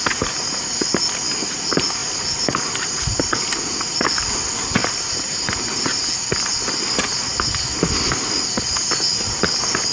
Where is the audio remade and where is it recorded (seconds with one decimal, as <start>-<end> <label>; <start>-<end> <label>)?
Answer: 0.0-4.8 recorded; 4.8-6.0 remade; 6.0-9.9 recorded